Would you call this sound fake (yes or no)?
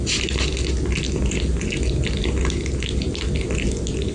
no